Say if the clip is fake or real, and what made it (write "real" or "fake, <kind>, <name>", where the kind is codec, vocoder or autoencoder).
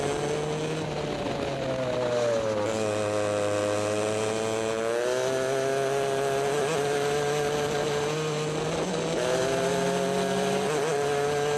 real